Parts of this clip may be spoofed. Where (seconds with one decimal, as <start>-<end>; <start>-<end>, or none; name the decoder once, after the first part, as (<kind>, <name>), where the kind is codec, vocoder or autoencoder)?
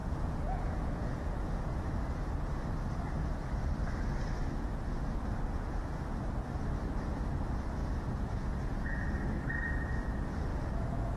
0.0-2.1 (vocoder, Vocos); 7.8-9.0; 10.5-11.2